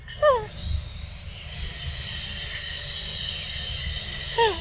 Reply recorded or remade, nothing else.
recorded